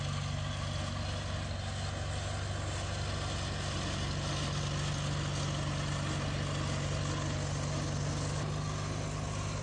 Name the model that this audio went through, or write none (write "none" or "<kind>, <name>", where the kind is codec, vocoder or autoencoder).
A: none